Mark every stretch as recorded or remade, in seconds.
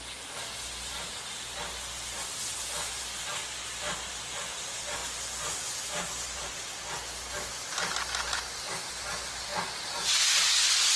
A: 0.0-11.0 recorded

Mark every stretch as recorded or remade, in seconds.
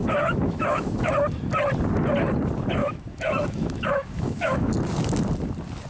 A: 0.0-1.1 remade; 1.1-2.8 recorded; 2.8-4.7 remade; 4.7-5.9 recorded